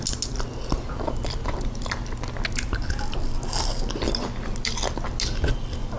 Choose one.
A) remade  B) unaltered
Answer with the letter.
B